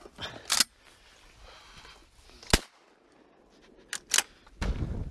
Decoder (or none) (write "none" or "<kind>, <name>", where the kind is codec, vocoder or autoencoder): none